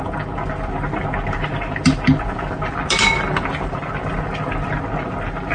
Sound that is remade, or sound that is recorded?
recorded